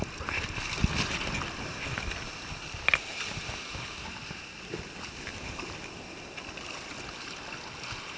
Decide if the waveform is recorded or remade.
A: recorded